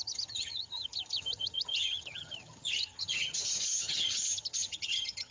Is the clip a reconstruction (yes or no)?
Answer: yes